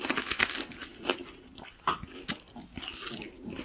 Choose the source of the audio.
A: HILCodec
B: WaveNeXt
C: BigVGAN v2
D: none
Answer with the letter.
D